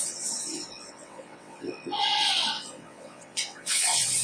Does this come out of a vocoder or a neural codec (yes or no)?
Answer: yes